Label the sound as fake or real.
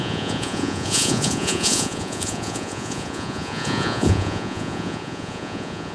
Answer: fake